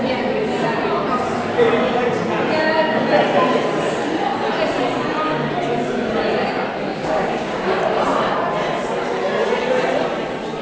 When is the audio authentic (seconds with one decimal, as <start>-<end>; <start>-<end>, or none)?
0.0-6.9; 7.8-10.6